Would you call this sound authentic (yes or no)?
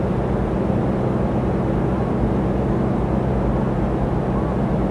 yes